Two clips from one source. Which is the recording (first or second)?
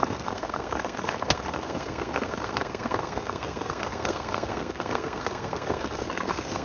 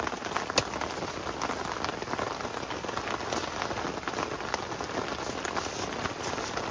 second